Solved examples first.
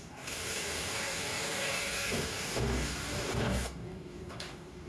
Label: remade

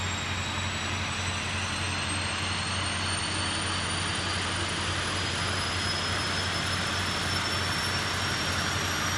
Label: recorded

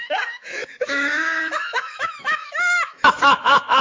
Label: remade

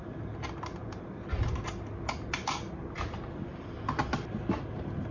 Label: recorded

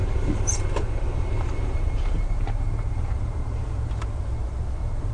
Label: remade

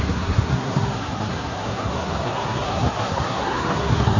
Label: remade